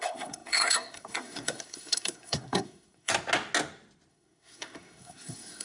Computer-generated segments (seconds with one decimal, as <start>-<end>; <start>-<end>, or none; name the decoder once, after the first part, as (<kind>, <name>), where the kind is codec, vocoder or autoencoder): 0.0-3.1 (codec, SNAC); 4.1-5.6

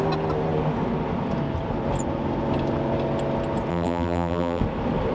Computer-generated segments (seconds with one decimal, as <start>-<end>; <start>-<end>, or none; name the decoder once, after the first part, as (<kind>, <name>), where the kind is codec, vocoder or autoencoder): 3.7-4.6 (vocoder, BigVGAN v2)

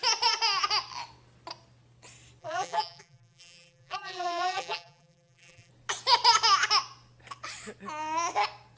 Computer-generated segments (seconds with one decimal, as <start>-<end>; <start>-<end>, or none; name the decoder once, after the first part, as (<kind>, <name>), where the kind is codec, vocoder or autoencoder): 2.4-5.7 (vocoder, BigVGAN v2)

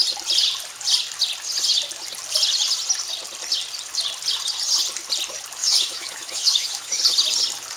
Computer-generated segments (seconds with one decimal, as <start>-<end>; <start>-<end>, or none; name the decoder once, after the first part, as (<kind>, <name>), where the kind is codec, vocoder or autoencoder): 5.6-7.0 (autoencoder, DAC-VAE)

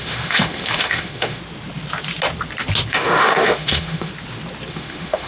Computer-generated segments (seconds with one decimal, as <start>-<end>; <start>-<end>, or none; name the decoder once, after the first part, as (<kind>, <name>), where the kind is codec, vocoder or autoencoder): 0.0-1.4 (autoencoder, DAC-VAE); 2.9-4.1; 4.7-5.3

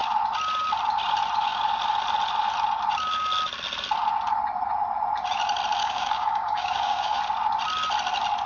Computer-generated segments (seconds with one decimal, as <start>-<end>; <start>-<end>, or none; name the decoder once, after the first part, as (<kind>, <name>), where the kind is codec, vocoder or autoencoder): 5.8-7.2 (codec, DAC)

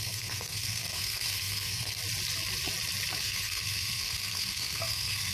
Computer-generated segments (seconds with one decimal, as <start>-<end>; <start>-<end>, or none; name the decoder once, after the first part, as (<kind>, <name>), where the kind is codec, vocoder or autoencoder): 0.0-2.0 (codec, SNAC); 3.2-5.3

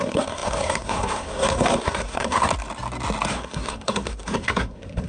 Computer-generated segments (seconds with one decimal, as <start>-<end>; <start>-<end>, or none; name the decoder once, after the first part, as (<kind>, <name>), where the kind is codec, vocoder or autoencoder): 0.0-2.5 (codec, SNAC); 3.3-5.1